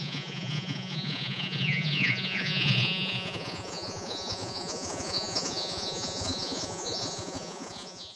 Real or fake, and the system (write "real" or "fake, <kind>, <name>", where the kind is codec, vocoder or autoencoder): fake, vocoder, Vocos